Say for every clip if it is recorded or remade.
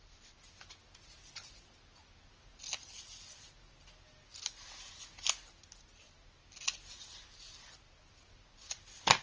recorded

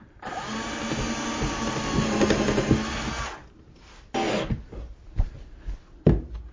recorded